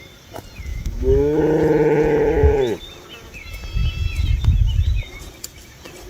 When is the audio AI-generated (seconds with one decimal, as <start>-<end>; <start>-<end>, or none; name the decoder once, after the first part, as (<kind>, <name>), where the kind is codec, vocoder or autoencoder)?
0.7-1.4 (autoencoder, DAC-VAE)